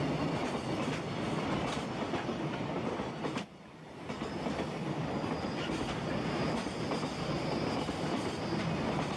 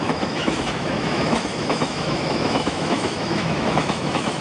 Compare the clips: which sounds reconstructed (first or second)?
second